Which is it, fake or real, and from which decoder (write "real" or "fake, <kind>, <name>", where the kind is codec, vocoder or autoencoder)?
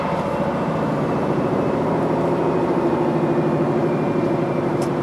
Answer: fake, vocoder, BigVGAN v2